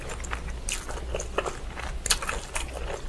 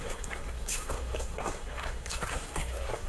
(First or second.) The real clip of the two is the first